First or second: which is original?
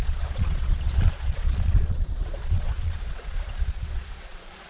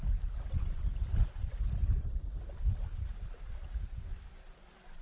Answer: second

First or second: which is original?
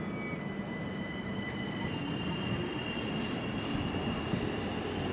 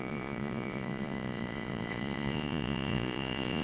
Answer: first